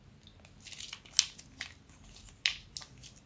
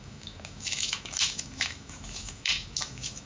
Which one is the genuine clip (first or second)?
first